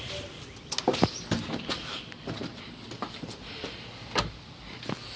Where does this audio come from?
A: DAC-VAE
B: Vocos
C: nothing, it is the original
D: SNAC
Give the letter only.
C